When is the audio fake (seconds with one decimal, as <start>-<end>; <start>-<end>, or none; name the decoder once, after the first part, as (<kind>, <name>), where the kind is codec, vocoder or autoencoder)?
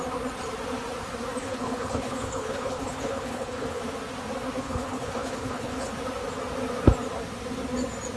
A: 1.4-3.8 (codec, HILCodec); 4.6-5.9